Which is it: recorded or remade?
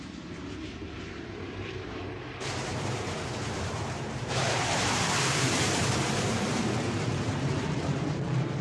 remade